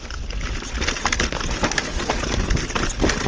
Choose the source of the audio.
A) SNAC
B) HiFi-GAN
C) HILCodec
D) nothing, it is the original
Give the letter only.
D